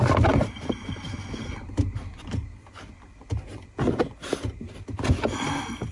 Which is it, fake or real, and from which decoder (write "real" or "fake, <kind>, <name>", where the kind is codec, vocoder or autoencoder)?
real